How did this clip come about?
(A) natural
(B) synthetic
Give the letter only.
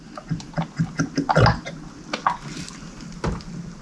A